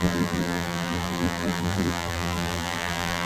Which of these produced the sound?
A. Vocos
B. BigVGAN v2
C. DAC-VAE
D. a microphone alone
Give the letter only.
B